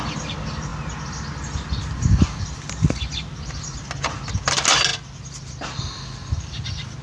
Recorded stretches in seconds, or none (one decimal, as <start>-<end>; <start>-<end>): 0.0-7.0